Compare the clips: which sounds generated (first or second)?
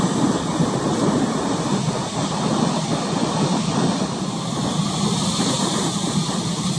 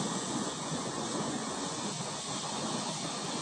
second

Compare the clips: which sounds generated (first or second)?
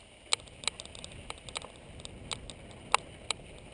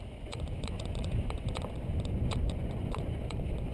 second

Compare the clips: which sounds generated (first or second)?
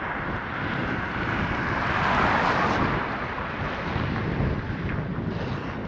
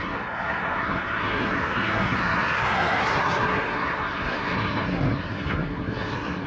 second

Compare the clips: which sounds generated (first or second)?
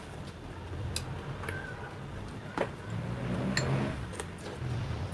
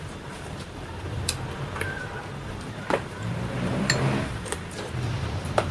second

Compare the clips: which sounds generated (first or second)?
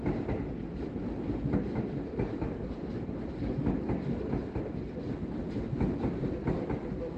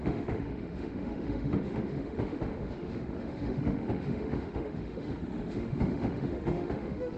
second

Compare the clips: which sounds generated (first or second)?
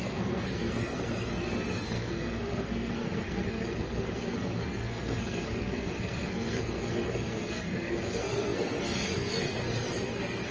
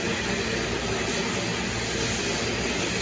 first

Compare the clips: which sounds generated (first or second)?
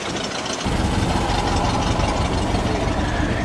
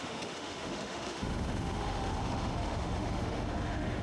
second